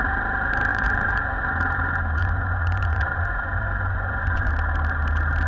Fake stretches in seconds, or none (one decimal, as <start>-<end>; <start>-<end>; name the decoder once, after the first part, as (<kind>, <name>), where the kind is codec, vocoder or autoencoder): 0.7-1.5 (vocoder, Vocos); 2.2-4.5